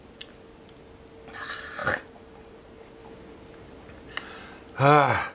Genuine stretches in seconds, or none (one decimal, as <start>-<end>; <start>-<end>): 0.0-1.8; 2.6-5.3